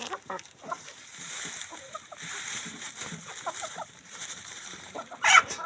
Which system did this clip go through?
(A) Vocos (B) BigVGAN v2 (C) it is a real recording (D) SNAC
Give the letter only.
B